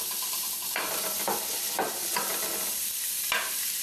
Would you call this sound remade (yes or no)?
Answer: no